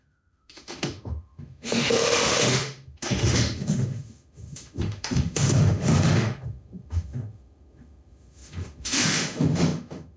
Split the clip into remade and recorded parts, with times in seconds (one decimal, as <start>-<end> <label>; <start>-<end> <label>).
0.0-10.2 remade